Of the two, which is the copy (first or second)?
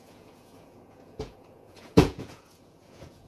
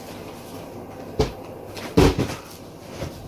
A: first